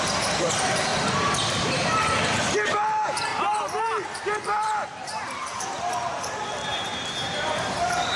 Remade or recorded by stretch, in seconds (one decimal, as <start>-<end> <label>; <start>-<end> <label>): 0.0-0.9 remade; 0.9-1.6 recorded; 1.6-3.3 remade; 3.3-4.1 recorded; 4.1-8.2 remade

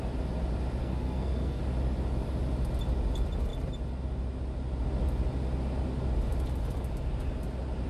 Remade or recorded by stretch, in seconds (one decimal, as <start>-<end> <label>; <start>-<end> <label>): 0.0-0.8 recorded; 0.8-1.6 remade; 1.6-7.9 recorded

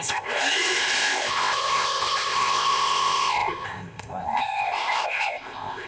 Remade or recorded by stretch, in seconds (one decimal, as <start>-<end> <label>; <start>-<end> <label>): 0.0-5.9 remade

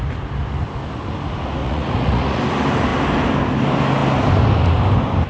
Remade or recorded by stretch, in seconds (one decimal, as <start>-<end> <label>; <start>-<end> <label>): 0.0-1.6 recorded; 1.6-2.4 remade; 2.4-5.3 recorded